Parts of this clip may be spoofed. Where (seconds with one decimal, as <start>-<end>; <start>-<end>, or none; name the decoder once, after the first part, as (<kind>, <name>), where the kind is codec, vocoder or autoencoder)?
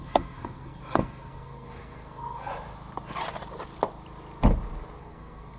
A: 0.0-2.5 (codec, SNAC); 5.0-5.6